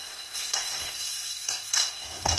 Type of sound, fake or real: fake